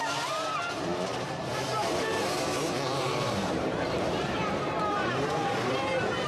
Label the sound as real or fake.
fake